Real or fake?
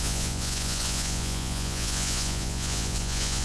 fake